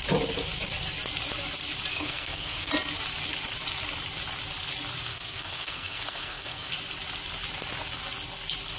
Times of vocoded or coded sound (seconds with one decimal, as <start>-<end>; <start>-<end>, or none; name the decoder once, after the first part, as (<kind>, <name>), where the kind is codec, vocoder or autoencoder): 1.9-2.7 (codec, SNAC); 5.1-6.7